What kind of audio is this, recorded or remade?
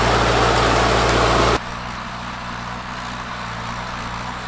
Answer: recorded